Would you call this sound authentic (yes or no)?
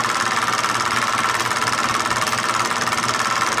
yes